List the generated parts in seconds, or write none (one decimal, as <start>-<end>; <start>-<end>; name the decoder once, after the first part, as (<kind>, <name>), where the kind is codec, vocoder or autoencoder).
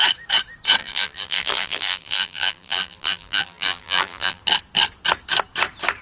0.8-4.4 (vocoder, BigVGAN v2)